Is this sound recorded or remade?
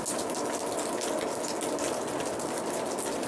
recorded